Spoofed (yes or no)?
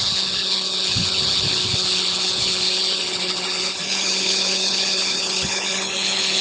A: yes